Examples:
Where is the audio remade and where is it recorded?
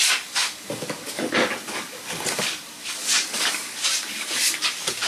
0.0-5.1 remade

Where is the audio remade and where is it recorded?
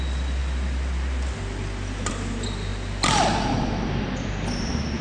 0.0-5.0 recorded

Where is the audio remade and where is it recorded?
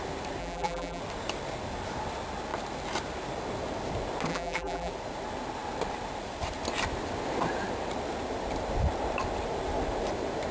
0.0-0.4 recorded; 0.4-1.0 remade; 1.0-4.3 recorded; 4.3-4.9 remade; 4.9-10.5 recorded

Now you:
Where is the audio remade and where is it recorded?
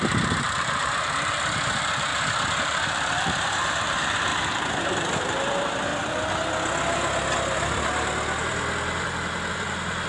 0.0-2.1 remade; 2.1-2.6 recorded; 2.6-5.9 remade; 5.9-9.5 recorded; 9.5-10.1 remade